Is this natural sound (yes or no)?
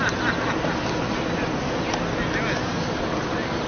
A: yes